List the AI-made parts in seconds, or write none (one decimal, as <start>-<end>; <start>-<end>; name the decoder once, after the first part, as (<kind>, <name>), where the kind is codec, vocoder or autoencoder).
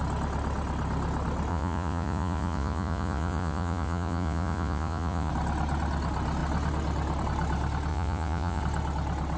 1.5-5.3 (vocoder, Vocos); 7.9-8.6